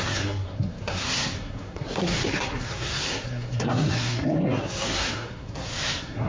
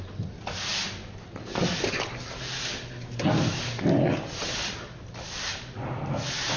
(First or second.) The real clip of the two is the second